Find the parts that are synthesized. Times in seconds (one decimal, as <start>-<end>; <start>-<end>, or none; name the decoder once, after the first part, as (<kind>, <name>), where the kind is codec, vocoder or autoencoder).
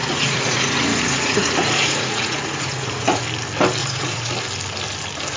0.0-3.2 (vocoder, Vocos); 3.8-4.3